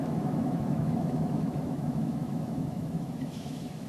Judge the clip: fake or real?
fake